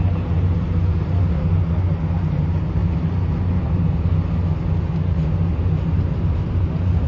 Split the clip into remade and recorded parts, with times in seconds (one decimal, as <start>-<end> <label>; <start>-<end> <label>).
0.0-7.1 recorded